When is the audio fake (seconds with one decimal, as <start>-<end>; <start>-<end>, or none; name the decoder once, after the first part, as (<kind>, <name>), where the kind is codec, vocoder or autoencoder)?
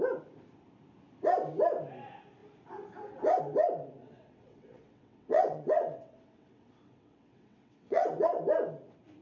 4.0-8.4 (vocoder, WaveNeXt)